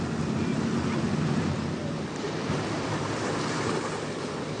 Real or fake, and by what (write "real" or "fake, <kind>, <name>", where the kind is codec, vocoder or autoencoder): fake, vocoder, BigVGAN v2